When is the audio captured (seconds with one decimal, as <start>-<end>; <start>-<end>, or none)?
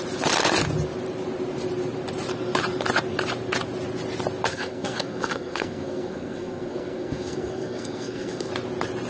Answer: 0.0-4.5; 8.5-9.1